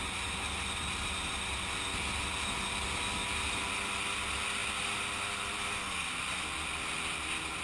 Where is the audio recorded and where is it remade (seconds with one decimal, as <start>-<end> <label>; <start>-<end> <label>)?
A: 0.0-7.6 recorded